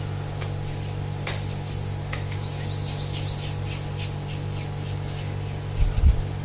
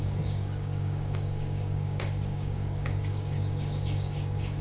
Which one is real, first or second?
first